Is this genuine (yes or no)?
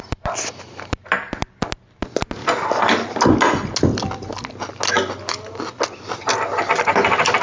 yes